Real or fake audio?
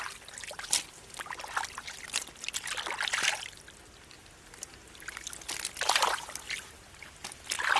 real